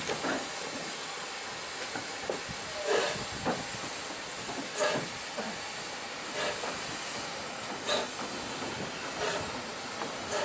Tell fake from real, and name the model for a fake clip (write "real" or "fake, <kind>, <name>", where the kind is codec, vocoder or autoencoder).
real